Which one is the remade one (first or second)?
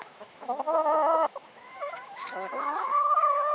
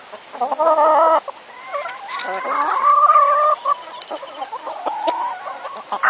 first